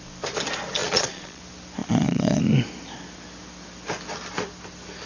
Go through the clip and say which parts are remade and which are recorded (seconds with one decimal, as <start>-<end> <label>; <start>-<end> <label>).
0.0-0.8 recorded; 0.8-1.4 remade; 1.4-1.8 recorded; 1.8-2.4 remade; 2.4-5.1 recorded